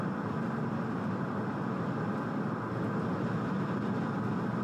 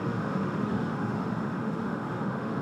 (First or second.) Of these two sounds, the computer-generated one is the second